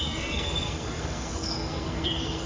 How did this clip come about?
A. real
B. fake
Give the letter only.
B